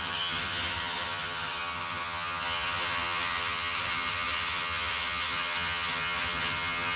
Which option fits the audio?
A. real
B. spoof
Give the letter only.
B